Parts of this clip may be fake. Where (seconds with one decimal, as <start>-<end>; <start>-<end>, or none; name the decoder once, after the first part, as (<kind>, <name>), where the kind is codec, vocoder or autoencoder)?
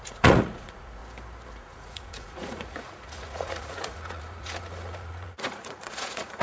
0.0-1.0 (vocoder, Vocos); 1.5-6.4